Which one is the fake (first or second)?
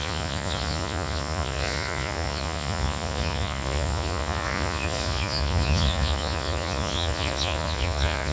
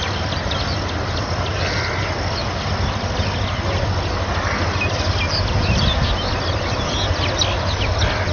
first